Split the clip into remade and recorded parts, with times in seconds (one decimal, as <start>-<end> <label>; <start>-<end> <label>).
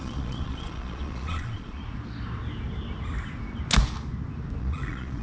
0.0-1.8 remade; 1.8-4.6 recorded; 4.6-5.2 remade